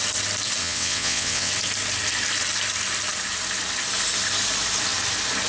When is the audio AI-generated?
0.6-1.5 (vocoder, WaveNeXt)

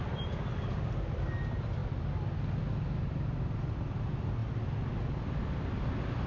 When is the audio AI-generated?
none